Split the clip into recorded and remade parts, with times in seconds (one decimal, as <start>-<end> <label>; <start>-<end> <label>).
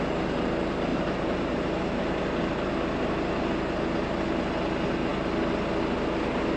0.0-0.9 recorded; 0.9-2.2 remade; 2.2-6.6 recorded